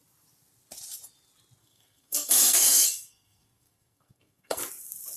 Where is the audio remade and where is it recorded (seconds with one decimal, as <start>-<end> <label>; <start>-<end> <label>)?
0.0-1.6 recorded; 1.6-4.6 remade; 4.6-5.2 recorded